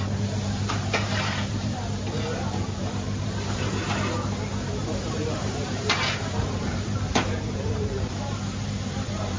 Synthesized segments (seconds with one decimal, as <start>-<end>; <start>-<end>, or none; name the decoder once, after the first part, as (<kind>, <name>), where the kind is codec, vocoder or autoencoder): 0.0-3.7 (vocoder, BigVGAN v2); 4.5-9.4